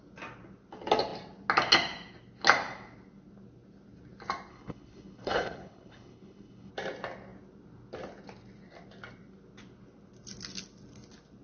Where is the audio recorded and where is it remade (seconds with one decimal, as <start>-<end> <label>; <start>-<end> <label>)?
0.0-4.5 recorded; 4.5-6.7 remade; 6.7-11.4 recorded